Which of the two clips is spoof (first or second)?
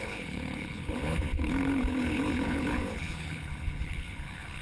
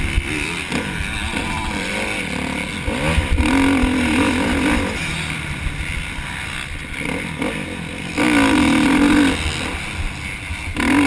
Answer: first